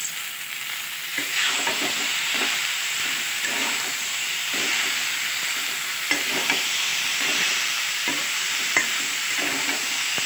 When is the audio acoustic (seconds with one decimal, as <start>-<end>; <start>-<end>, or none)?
0.0-1.1; 5.1-6.9; 9.0-10.3